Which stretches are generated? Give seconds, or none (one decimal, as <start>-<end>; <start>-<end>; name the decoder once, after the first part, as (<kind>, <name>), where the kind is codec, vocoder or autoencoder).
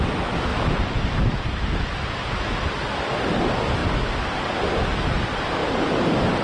0.5-1.7 (vocoder, BigVGAN v2); 3.8-4.6